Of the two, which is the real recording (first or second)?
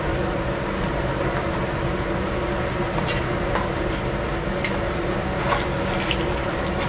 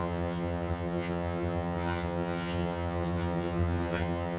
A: first